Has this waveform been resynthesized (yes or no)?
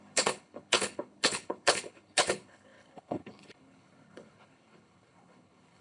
yes